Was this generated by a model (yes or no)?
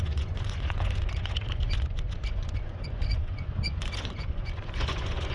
yes